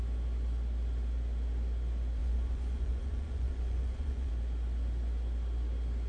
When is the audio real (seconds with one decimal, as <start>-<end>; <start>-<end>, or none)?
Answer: 0.0-2.2; 4.3-6.1